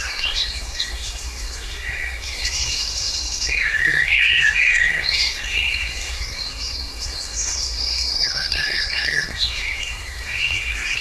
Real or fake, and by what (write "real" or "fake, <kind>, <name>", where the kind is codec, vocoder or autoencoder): fake, codec, SNAC